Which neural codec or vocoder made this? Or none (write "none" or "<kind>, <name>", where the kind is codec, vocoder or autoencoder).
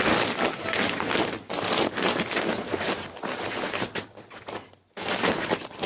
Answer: none